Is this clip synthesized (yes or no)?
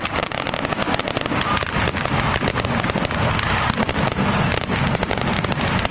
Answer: no